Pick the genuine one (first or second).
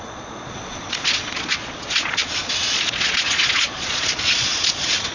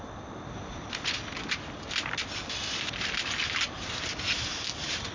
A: second